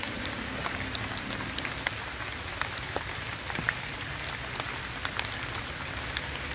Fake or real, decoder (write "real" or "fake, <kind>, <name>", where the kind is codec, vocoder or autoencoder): real